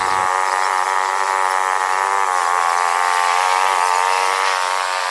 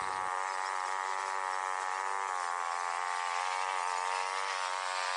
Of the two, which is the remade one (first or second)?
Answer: first